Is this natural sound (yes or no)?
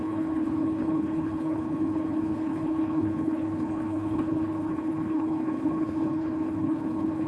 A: no